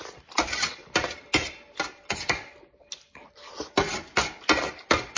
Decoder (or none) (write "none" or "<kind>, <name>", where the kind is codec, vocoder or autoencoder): none